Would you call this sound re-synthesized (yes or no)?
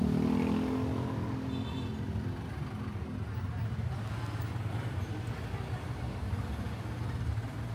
no